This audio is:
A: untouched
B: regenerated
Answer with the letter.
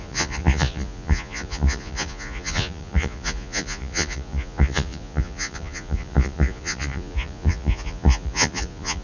B